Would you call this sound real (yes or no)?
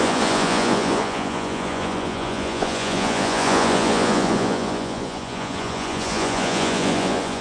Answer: no